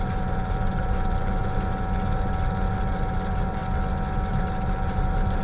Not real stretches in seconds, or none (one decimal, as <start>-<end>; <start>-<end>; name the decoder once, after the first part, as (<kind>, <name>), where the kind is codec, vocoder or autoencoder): 0.0-1.4 (vocoder, BigVGAN v2); 2.7-3.6; 4.3-5.4

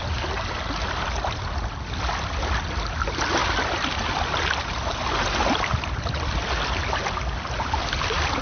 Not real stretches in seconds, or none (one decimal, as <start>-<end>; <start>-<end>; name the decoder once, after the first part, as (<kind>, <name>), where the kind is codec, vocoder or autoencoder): none

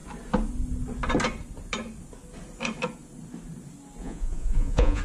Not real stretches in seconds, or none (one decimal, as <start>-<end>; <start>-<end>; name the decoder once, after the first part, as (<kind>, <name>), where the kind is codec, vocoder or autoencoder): 4.0-5.0 (vocoder, Vocos)